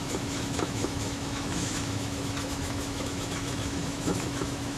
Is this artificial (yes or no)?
yes